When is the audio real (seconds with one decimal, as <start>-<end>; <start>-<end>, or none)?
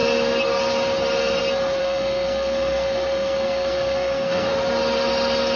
0.0-1.8; 4.5-5.6